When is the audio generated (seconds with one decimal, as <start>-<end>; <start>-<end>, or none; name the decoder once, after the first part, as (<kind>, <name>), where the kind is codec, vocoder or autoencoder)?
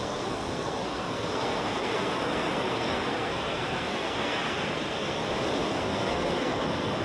0.0-5.2 (codec, SNAC); 5.7-7.0